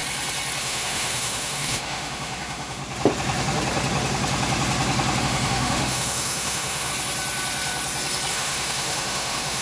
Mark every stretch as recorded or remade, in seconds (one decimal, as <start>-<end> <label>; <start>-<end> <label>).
0.0-0.6 recorded; 0.6-2.8 remade; 2.8-5.2 recorded; 5.2-6.9 remade; 6.9-8.3 recorded; 8.3-9.6 remade